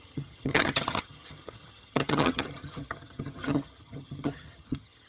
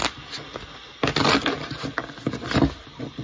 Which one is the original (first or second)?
second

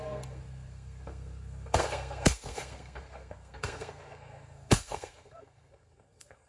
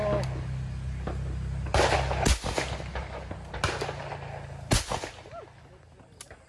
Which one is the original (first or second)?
second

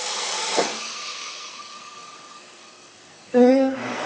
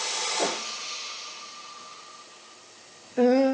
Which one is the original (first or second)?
second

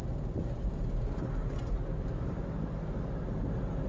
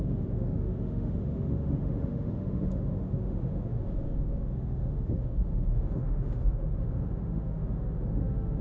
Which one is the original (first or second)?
first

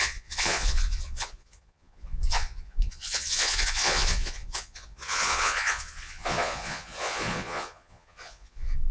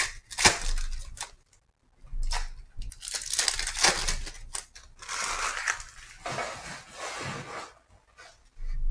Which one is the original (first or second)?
second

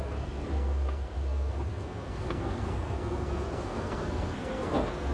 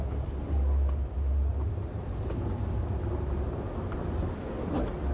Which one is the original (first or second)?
second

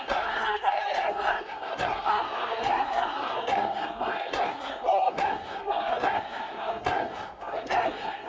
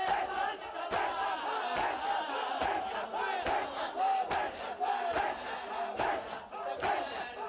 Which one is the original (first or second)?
second